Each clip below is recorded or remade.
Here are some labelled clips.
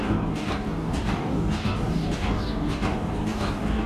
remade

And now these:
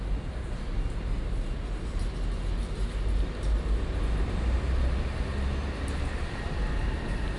recorded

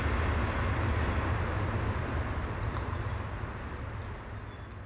recorded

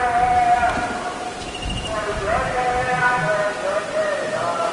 recorded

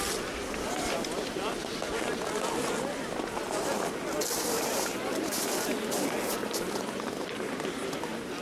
recorded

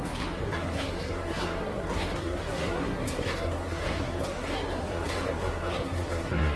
remade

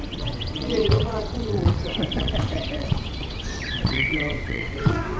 remade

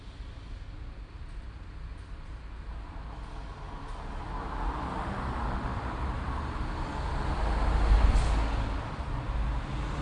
recorded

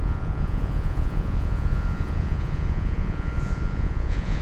remade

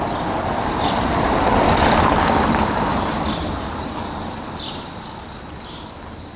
remade